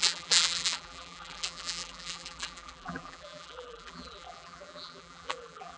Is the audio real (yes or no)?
no